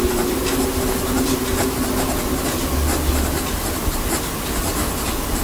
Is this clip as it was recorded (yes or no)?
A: yes